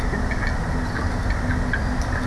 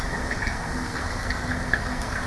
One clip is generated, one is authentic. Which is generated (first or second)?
second